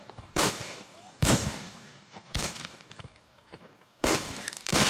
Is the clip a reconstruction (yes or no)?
yes